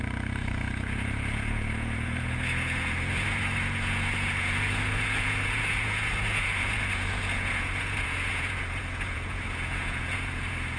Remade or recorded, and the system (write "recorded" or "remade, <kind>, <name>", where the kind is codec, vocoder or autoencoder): remade, vocoder, Vocos